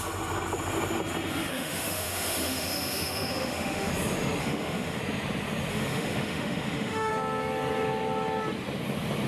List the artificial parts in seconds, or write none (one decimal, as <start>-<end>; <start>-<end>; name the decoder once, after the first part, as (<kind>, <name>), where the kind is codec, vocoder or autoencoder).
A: 1.5-3.9 (autoencoder, DAC-VAE); 4.4-5.0; 5.7-7.1